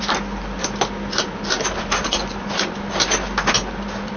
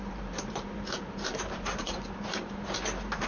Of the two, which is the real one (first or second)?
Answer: first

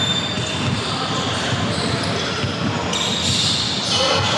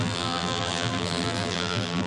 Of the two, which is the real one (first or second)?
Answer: first